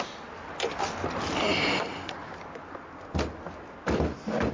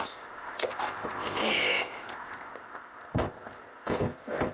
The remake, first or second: second